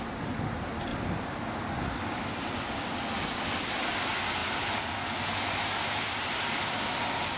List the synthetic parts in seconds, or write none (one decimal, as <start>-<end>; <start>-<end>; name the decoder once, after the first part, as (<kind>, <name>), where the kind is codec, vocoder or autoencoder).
none